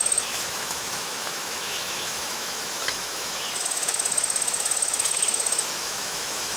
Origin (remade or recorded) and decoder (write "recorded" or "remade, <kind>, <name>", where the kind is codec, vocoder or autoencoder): remade, autoencoder, DAC-VAE